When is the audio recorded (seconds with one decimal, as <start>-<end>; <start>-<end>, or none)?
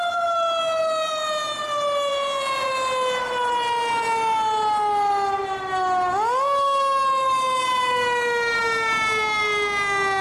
0.0-2.1; 2.7-10.2